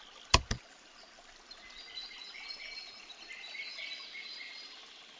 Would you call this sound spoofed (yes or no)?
no